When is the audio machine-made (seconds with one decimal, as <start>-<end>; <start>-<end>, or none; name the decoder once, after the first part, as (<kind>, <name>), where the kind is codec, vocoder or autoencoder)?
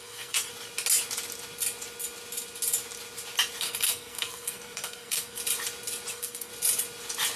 0.0-0.5 (codec, SNAC); 3.6-5.4; 6.1-6.5